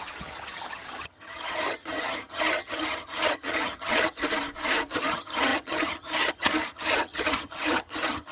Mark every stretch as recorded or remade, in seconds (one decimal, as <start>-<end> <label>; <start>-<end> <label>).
0.0-4.2 remade; 4.2-4.9 recorded; 4.9-8.3 remade